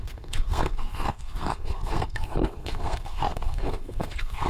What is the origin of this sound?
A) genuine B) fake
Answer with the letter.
B